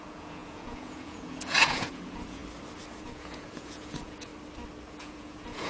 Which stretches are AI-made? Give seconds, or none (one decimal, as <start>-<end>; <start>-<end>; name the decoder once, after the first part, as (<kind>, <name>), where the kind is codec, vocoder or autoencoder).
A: 0.0-2.4 (vocoder, Vocos); 3.0-4.3; 4.9-5.7